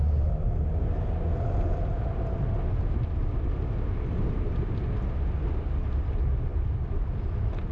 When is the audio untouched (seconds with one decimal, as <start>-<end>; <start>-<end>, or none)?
0.0-7.7